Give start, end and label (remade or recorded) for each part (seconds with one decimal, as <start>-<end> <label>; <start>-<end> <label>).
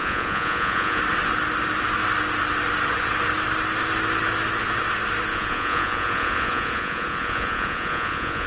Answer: 0.0-1.0 remade; 1.0-5.3 recorded; 5.3-8.5 remade